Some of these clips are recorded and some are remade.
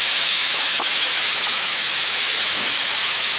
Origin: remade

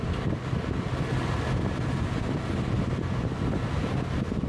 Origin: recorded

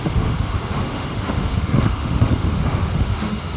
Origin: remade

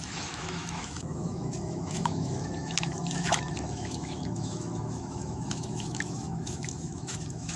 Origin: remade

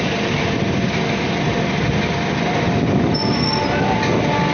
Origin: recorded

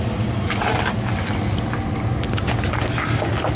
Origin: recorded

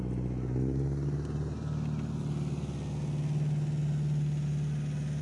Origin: recorded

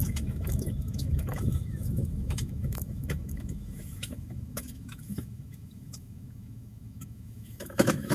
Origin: remade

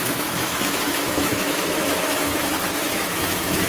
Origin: remade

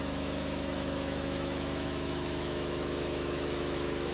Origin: remade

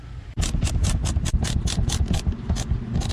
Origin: recorded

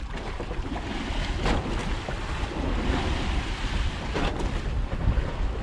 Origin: recorded